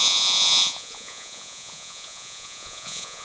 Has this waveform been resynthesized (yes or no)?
yes